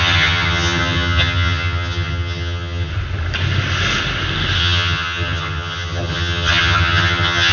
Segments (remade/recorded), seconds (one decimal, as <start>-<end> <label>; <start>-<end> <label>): 0.0-2.9 remade; 2.9-4.6 recorded; 4.6-7.5 remade